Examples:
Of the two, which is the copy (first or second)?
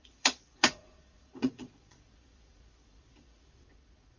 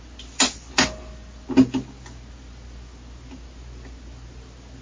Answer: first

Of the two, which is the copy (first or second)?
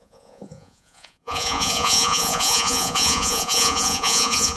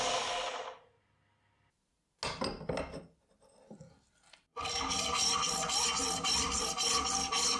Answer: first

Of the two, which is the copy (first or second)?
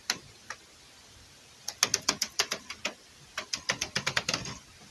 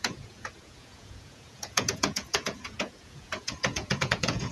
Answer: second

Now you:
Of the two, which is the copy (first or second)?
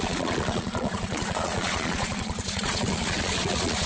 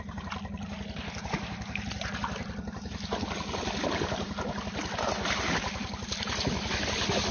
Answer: first